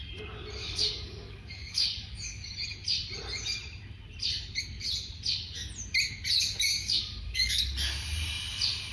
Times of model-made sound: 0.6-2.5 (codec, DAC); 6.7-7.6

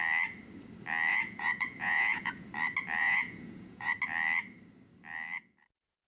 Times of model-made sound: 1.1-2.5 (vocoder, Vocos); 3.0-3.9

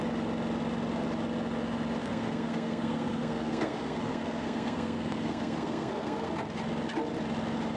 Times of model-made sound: 2.0-6.3 (codec, SNAC)

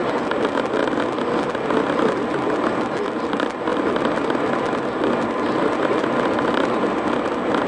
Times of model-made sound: 0.0-0.8 (vocoder, BigVGAN v2); 1.7-7.7